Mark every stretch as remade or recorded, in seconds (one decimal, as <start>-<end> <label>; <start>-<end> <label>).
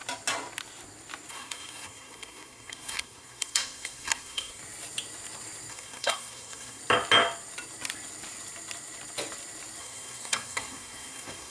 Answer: 0.0-1.3 recorded; 1.3-4.6 remade; 4.6-5.7 recorded; 5.7-6.8 remade; 6.8-9.8 recorded; 9.8-11.5 remade